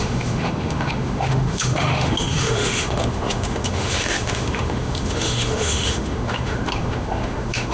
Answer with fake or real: fake